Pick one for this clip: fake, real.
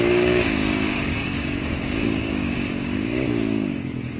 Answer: fake